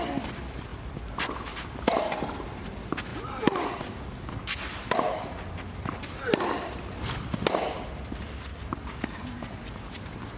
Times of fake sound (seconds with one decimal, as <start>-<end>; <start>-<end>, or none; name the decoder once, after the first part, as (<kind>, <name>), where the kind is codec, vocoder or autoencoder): none